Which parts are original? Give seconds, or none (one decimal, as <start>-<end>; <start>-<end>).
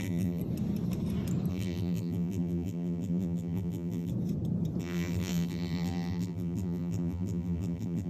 0.4-1.5; 4.1-4.8